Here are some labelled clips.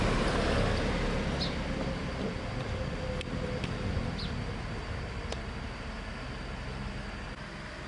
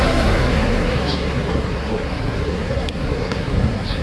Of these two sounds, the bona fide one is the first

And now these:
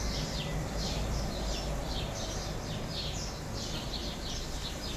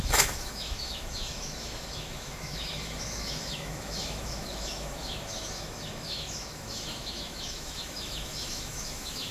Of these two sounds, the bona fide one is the first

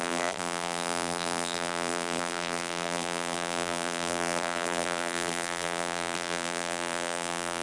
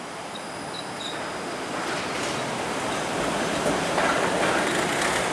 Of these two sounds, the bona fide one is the second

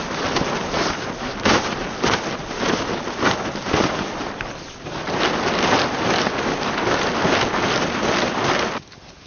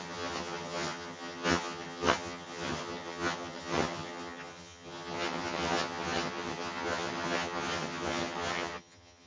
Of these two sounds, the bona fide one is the first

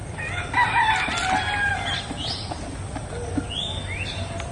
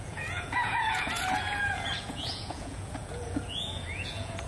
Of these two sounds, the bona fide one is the first